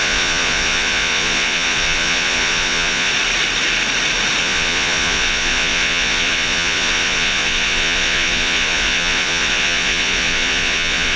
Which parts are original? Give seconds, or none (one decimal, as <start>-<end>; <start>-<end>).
3.1-4.4